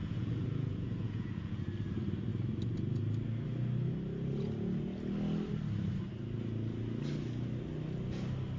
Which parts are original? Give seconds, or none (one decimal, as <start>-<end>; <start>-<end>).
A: 1.6-8.6